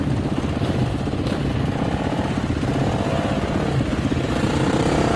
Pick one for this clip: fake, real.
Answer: real